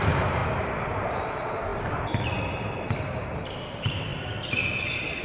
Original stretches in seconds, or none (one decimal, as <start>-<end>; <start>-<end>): 0.4-1.0; 4.1-5.2